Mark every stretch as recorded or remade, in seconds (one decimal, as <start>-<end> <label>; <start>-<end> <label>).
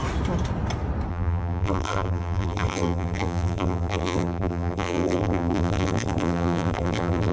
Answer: 0.0-1.1 recorded; 1.1-7.3 remade